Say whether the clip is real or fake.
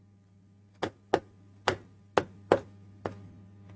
real